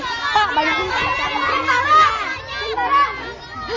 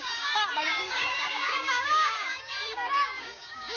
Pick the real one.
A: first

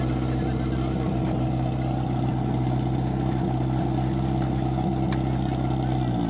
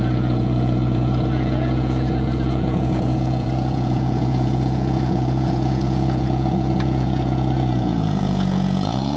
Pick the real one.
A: first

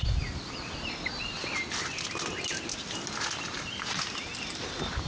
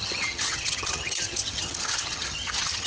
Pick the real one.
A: first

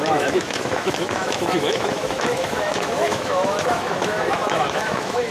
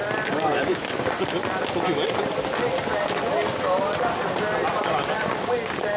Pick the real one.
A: second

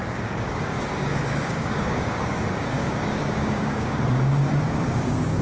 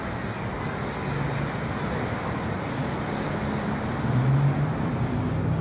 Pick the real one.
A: second